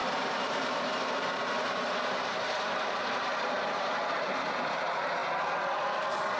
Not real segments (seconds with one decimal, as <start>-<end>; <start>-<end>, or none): 0.0-5.2